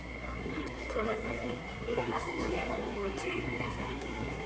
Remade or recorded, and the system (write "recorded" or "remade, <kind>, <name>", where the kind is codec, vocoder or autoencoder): remade, codec, SNAC